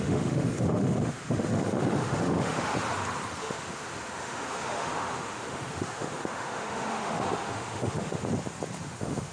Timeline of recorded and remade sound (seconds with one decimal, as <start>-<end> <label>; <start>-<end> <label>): 0.0-2.7 remade; 2.7-3.4 recorded; 3.4-8.2 remade; 8.2-8.8 recorded; 8.8-9.3 remade